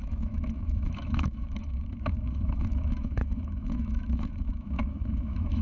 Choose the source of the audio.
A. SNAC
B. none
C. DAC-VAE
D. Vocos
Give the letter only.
C